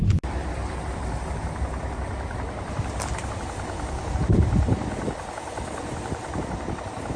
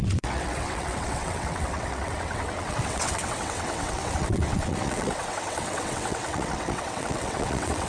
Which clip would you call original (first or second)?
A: first